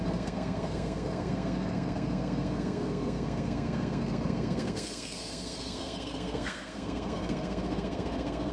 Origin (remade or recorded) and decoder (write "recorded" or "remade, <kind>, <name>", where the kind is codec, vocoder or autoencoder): remade, codec, SNAC